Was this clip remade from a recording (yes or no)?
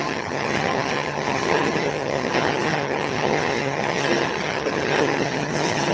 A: yes